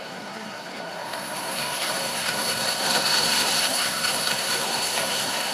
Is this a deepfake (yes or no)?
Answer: yes